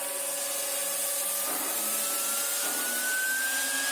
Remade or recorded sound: recorded